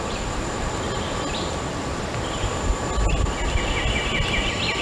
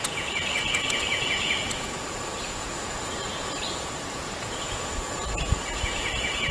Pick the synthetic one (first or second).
second